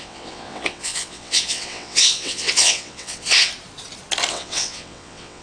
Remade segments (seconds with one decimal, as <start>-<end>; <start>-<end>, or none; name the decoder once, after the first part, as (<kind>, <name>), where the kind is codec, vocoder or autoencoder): 0.0-3.5 (vocoder, WaveNeXt); 4.3-5.4